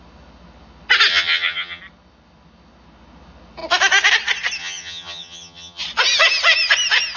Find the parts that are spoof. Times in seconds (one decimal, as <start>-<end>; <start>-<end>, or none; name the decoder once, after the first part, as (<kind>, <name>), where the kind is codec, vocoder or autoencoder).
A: 1.1-1.8 (vocoder, HiFi-GAN); 4.6-5.8